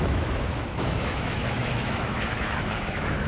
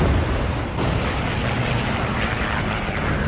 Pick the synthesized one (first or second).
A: first